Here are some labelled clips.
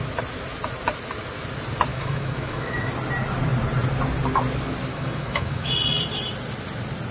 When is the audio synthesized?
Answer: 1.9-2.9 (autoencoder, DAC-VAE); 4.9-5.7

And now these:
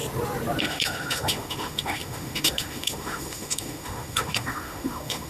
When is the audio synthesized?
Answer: 0.6-5.3 (autoencoder, DAC-VAE)

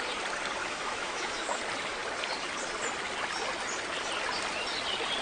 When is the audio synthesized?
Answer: 0.6-1.6 (autoencoder, DAC-VAE)

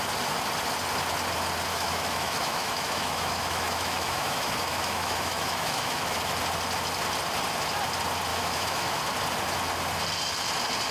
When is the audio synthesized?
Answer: 1.7-6.2 (autoencoder, DAC-VAE); 8.3-9.0

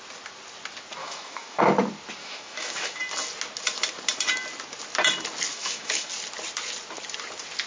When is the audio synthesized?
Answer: 1.0-1.6 (autoencoder, DAC-VAE); 2.2-3.0; 5.5-6.1

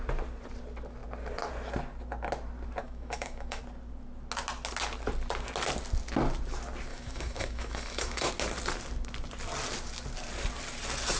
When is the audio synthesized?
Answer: 2.8-3.6 (autoencoder, DAC-VAE); 6.9-8.3

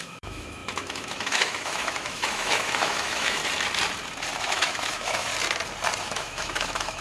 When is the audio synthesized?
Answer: 0.0-3.4 (autoencoder, DAC-VAE); 4.4-5.3; 6.0-7.0

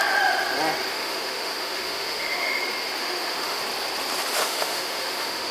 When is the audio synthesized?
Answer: 0.9-2.6 (autoencoder, DAC-VAE); 3.0-3.6; 4.4-5.5